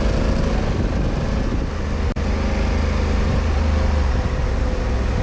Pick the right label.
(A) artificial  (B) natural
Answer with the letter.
B